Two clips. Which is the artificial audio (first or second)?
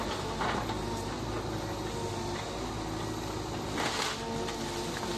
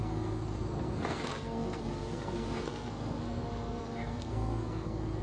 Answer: second